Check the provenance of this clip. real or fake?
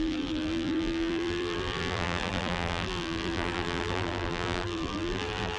fake